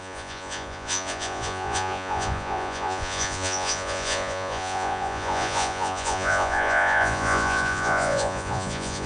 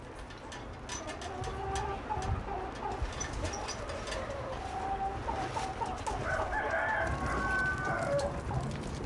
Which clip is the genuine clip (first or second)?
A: second